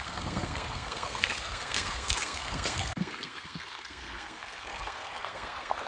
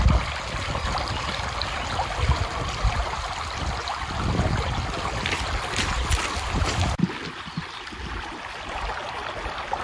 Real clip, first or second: second